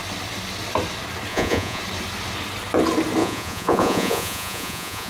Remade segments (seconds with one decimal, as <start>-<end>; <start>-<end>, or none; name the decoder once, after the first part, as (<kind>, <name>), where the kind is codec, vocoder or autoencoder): 1.3-1.8 (vocoder, Vocos); 3.2-5.1